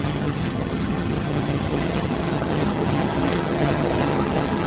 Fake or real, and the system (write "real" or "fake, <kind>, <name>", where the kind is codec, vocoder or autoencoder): fake, vocoder, HiFi-GAN